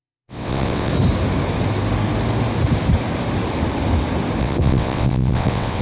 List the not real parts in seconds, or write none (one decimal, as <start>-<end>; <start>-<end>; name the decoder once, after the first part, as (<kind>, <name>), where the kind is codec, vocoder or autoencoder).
0.0-0.9 (vocoder, WaveNeXt); 4.4-5.8